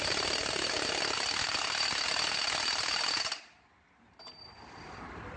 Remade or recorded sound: recorded